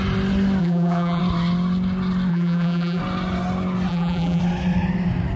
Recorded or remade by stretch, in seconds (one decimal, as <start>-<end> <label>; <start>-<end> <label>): 0.0-0.6 recorded; 0.6-1.2 remade; 1.2-2.3 recorded; 2.3-3.0 remade; 3.0-3.9 recorded; 3.9-4.4 remade; 4.4-5.4 recorded